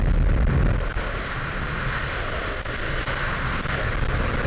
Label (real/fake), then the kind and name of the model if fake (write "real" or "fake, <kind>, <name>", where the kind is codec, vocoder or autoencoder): real